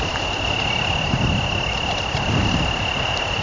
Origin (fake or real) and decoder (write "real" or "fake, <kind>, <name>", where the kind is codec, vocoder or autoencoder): real